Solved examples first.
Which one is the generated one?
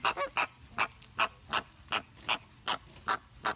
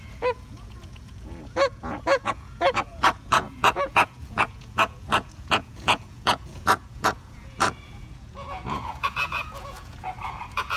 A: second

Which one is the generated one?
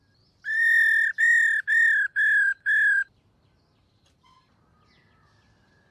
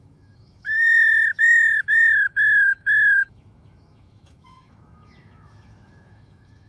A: second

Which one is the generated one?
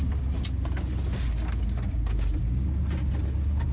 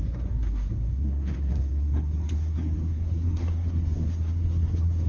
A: second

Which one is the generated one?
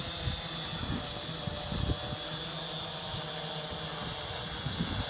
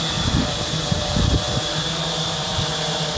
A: second